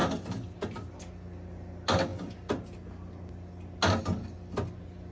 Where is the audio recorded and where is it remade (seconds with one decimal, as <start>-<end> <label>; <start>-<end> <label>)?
0.0-1.0 remade; 1.0-5.1 recorded